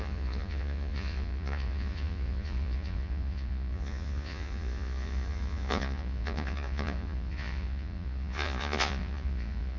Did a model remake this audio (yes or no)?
yes